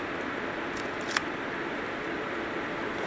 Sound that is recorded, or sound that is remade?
remade